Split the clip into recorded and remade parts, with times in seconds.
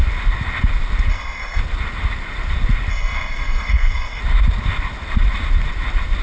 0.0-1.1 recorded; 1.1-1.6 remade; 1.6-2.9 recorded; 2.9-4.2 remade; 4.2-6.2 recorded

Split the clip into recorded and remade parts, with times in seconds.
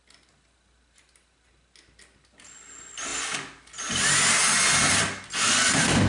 0.0-6.1 recorded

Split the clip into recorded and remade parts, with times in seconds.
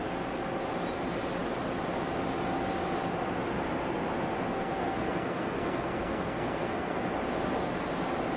0.0-4.5 recorded; 4.5-7.0 remade; 7.0-8.4 recorded